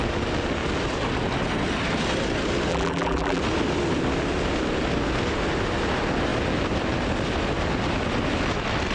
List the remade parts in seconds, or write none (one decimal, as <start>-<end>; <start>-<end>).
2.7-3.4